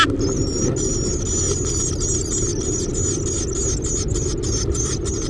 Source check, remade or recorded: recorded